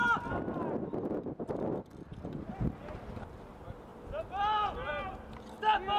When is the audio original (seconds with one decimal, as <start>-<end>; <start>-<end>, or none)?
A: 0.0-6.0